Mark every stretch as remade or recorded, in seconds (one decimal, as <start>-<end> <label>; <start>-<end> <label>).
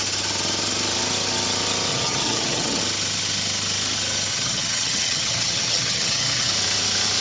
0.0-1.9 recorded; 1.9-2.8 remade; 2.8-4.3 recorded; 4.3-6.5 remade; 6.5-7.2 recorded